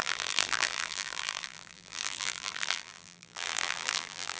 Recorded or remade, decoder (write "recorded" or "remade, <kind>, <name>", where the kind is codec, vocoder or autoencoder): remade, vocoder, BigVGAN v2